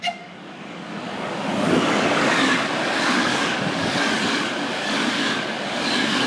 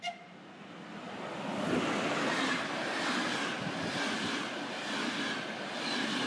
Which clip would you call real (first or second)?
second